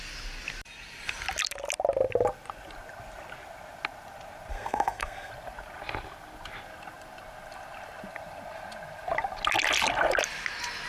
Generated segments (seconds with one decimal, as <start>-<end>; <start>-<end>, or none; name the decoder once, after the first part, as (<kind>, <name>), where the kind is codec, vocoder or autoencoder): 4.5-5.3 (codec, SNAC)